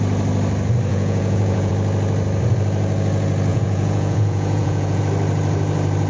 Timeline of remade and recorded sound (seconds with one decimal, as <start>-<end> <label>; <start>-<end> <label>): 0.0-0.9 recorded; 0.9-1.7 remade; 1.7-3.5 recorded; 3.5-5.0 remade; 5.0-6.1 recorded

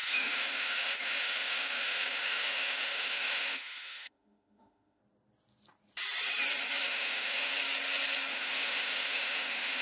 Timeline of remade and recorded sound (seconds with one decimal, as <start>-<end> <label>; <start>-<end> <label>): 0.0-5.0 remade; 5.0-6.9 recorded; 6.9-7.5 remade; 7.5-8.3 recorded; 8.3-9.8 remade

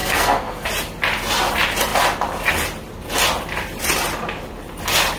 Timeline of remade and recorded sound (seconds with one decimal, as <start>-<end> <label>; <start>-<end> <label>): 0.0-0.7 remade; 0.7-5.2 recorded

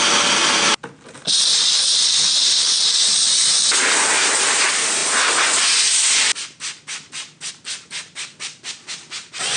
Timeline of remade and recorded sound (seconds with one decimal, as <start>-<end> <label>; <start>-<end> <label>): 0.0-3.0 recorded; 3.0-3.6 remade; 3.6-9.6 recorded

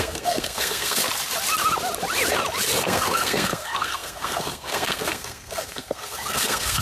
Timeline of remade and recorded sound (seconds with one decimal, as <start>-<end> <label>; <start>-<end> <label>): 0.0-1.0 remade; 1.0-2.8 recorded; 2.8-6.8 remade